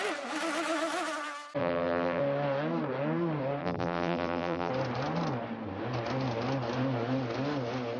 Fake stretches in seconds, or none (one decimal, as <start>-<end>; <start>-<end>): 1.6-2.2; 3.6-4.7